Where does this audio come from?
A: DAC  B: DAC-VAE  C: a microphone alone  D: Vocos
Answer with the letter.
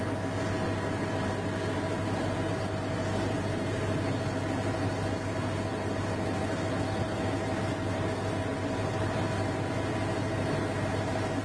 C